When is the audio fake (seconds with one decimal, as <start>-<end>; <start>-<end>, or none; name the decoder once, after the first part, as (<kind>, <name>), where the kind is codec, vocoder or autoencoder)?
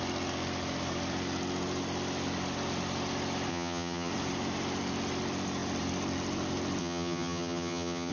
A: 3.5-4.1 (vocoder, HiFi-GAN); 6.8-8.1